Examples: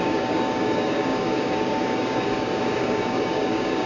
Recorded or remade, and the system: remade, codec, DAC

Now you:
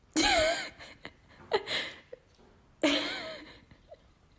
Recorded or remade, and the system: recorded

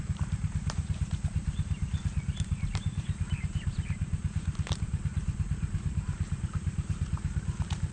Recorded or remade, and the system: remade, vocoder, BigVGAN v2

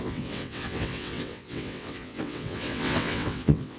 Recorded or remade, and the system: remade, vocoder, WaveNeXt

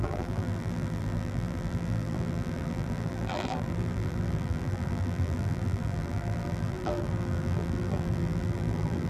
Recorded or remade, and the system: remade, vocoder, BigVGAN v2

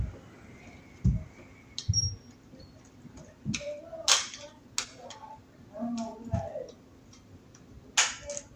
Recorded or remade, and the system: recorded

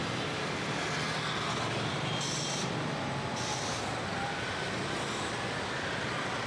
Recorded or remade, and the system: recorded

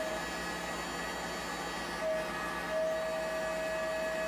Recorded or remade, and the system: recorded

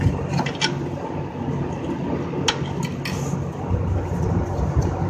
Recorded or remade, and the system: recorded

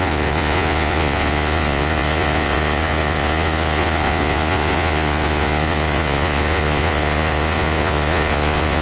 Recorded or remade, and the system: remade, vocoder, Vocos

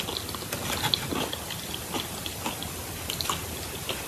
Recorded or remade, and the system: recorded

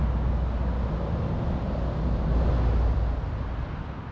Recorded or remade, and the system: recorded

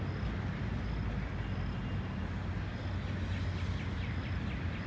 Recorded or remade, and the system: recorded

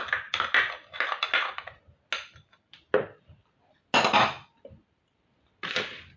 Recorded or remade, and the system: recorded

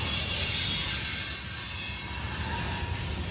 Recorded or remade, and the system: recorded